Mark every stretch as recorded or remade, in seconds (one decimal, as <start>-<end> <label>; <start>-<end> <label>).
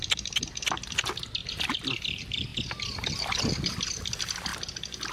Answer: 0.0-5.1 recorded